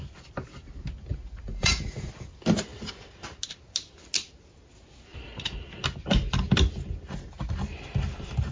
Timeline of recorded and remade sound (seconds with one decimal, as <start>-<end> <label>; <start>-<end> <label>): 0.0-1.1 recorded; 1.1-2.1 remade; 2.1-8.5 recorded